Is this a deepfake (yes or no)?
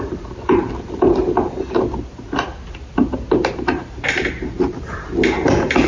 no